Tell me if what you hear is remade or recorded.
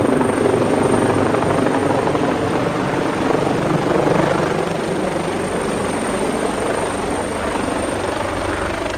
recorded